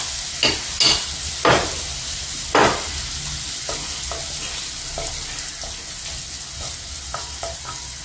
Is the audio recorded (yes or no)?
yes